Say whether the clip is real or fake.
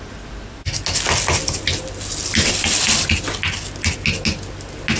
real